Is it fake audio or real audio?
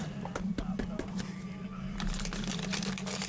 real